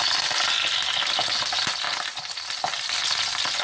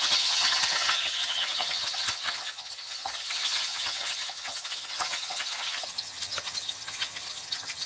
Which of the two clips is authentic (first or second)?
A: first